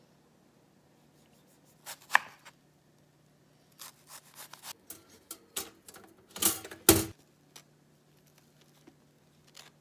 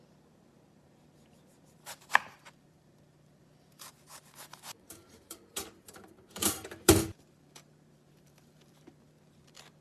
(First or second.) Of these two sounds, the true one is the first